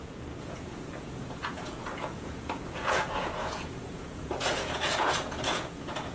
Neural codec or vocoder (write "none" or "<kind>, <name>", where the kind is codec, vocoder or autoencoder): vocoder, Vocos